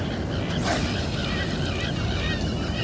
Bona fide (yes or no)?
yes